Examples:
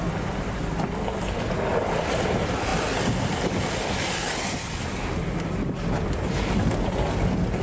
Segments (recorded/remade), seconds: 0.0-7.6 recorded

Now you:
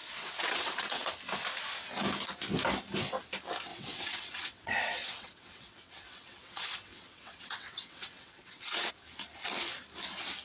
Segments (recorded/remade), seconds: 0.0-1.1 remade; 1.1-3.7 recorded; 3.7-8.9 remade; 8.9-10.4 recorded

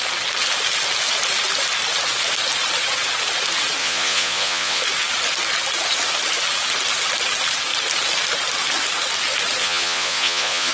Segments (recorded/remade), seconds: 0.0-3.8 recorded; 3.8-4.8 remade; 4.8-9.6 recorded; 9.6-10.7 remade

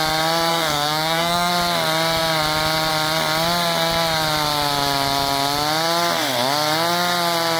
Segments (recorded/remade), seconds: 0.0-0.5 recorded; 0.5-1.5 remade; 1.5-7.6 recorded

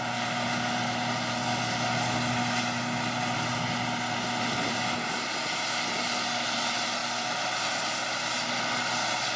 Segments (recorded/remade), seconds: 0.0-9.4 recorded